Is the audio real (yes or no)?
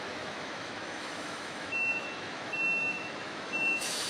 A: no